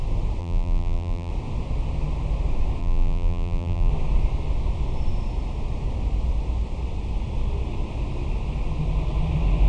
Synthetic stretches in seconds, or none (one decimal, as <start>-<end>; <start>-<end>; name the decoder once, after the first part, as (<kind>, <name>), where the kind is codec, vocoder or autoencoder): 0.4-1.3 (vocoder, BigVGAN v2); 2.8-3.9